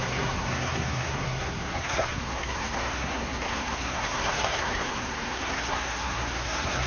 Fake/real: fake